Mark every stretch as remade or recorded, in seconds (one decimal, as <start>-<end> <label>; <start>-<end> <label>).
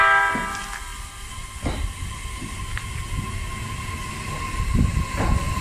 0.0-5.6 recorded